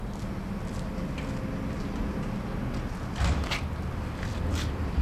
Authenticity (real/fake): real